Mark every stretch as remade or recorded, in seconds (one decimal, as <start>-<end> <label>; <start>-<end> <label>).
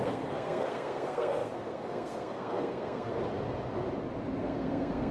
0.0-3.1 remade; 3.1-4.4 recorded; 4.4-5.1 remade